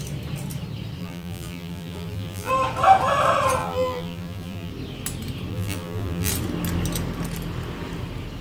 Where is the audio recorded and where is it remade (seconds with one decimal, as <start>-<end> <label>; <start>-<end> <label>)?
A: 0.0-1.0 recorded; 1.0-2.5 remade; 2.5-3.6 recorded; 3.6-4.7 remade; 4.7-5.5 recorded; 5.5-6.3 remade; 6.3-8.4 recorded